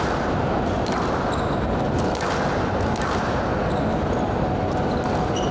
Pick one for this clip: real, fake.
real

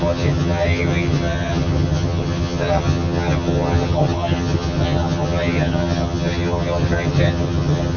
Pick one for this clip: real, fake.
fake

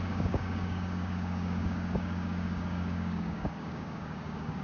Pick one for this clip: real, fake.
fake